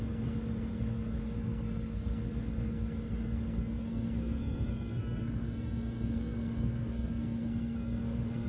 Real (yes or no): no